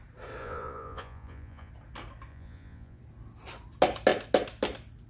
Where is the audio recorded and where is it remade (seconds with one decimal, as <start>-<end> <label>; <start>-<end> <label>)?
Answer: 0.0-0.4 recorded; 0.4-1.7 remade; 1.7-2.3 recorded; 2.3-3.0 remade; 3.0-5.1 recorded